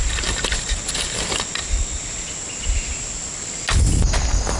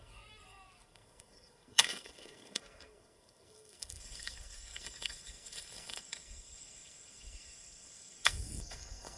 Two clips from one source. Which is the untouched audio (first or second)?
first